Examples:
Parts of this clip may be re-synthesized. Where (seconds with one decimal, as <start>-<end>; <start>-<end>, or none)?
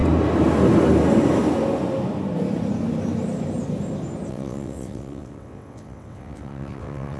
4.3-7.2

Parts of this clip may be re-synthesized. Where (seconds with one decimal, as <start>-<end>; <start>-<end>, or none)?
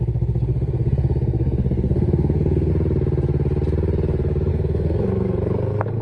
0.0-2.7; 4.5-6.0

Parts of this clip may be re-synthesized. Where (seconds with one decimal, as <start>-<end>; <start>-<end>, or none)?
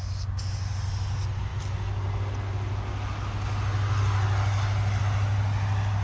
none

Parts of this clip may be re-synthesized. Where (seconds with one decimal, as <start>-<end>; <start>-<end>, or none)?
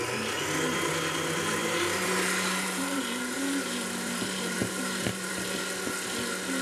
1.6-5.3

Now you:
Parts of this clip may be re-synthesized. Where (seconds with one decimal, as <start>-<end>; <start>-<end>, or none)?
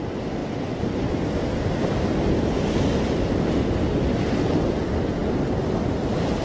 none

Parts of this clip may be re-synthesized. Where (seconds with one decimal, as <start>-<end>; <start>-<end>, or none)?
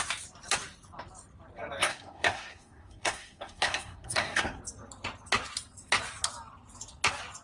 1.8-4.6